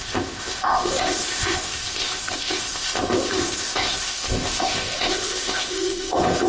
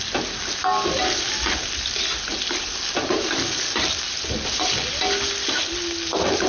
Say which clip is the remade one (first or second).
first